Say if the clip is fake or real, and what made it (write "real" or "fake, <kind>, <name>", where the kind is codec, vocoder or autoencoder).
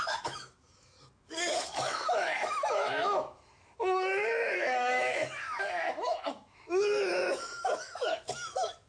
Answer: fake, autoencoder, DAC-VAE